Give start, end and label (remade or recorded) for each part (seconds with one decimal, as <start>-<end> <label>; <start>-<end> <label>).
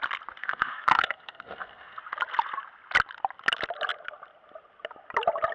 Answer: 0.0-0.4 recorded; 0.4-2.0 remade; 2.0-5.5 recorded